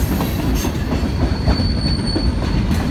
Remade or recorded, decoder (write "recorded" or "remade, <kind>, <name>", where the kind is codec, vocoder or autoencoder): remade, vocoder, BigVGAN v2